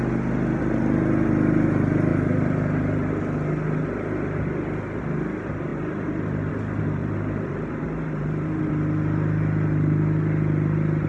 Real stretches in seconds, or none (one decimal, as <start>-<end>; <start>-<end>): 0.0-2.1; 3.2-5.7; 6.5-7.0; 8.6-11.1